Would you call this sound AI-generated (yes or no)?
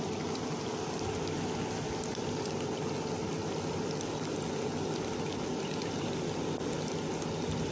no